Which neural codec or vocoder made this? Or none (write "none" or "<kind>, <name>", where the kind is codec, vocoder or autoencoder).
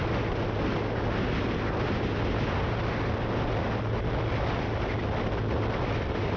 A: none